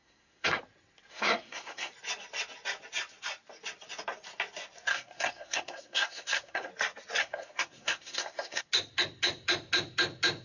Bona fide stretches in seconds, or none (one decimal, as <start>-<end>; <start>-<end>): 0.6-1.1; 1.9-4.9; 6.7-7.2; 8.7-10.4

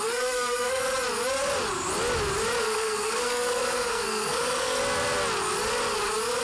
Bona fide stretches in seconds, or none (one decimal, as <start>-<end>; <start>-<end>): 0.8-2.6; 4.8-6.4

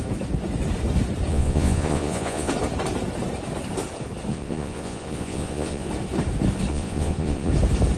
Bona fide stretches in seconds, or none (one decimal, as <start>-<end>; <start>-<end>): 0.0-1.3; 2.5-4.3; 5.9-6.7; 7.5-8.0

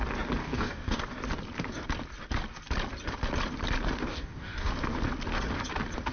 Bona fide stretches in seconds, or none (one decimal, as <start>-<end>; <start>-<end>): 0.0-0.4; 1.1-4.1; 4.7-6.1

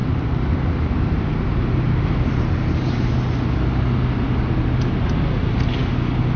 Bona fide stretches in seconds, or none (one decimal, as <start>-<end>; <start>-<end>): 3.1-6.4

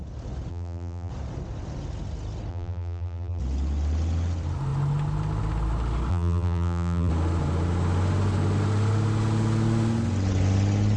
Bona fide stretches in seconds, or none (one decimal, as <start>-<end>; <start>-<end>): 0.0-0.5; 1.1-2.5; 3.4-6.1; 7.1-11.0

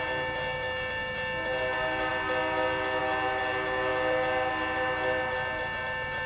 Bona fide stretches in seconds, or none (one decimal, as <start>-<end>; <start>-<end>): 0.0-6.3